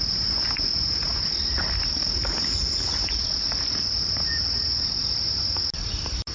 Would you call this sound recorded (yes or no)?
yes